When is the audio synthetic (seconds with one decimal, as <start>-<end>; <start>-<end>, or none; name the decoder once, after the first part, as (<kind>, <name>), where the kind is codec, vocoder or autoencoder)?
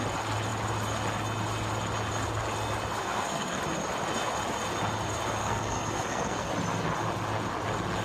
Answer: 3.0-3.6 (codec, SNAC); 5.4-6.5